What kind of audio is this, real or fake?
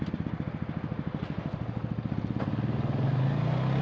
real